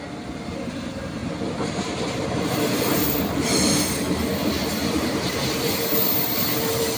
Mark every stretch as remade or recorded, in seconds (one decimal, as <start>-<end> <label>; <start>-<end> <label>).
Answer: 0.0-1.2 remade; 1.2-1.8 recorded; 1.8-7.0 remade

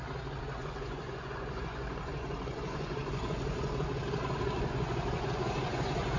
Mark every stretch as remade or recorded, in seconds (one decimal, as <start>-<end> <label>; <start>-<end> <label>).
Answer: 0.0-6.2 remade

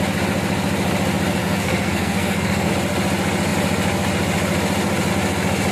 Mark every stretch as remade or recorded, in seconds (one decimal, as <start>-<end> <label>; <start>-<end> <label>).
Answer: 0.0-1.4 recorded; 1.4-2.7 remade; 2.7-5.7 recorded

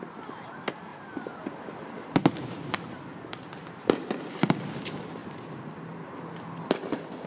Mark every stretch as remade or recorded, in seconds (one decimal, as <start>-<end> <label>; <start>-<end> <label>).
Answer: 0.0-7.3 recorded

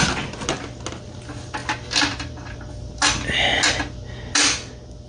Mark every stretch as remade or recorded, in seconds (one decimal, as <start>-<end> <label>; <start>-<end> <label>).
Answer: 0.0-5.1 recorded

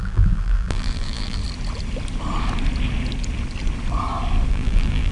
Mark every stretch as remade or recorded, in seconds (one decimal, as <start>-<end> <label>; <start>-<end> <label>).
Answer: 0.0-1.4 remade; 1.4-4.5 recorded; 4.5-5.1 remade

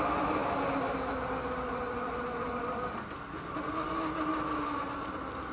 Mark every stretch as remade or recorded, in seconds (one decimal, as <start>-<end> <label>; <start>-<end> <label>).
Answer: 0.0-5.5 recorded

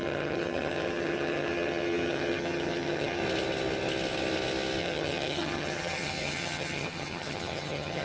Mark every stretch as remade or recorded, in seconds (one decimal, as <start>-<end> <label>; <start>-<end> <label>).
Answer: 0.0-3.2 remade; 3.2-4.8 recorded; 4.8-8.0 remade